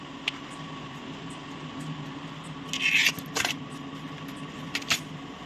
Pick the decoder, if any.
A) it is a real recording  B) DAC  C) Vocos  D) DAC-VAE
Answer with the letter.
A